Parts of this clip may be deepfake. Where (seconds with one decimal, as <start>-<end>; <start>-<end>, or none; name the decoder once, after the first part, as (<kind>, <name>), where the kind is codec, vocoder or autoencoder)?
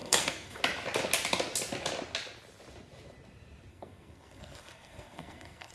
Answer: 0.0-0.6 (codec, SNAC); 3.7-5.7